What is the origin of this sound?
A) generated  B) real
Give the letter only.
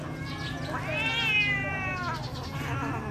B